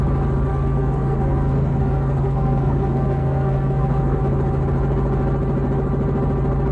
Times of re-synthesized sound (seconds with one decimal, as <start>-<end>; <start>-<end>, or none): 0.5-4.2